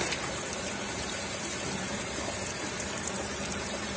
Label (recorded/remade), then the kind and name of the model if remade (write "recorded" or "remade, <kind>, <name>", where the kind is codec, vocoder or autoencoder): remade, vocoder, BigVGAN v2